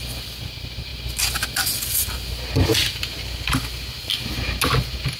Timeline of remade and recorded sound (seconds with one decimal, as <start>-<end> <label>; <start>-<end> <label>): 0.0-5.2 recorded